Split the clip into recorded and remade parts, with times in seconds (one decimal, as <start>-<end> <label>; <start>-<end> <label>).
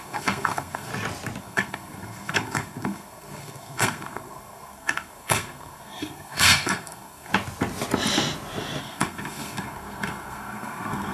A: 0.0-0.9 remade; 0.9-1.4 recorded; 1.4-7.3 remade; 7.3-8.8 recorded; 8.8-11.1 remade